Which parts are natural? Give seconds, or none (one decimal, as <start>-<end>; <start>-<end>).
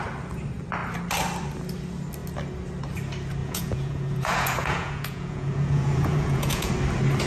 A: 0.0-3.4; 6.7-7.3